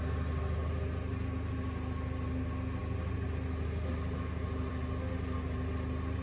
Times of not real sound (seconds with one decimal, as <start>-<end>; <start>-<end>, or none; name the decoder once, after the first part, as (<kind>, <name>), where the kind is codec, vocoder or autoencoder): none